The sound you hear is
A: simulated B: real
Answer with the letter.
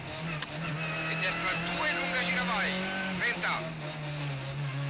B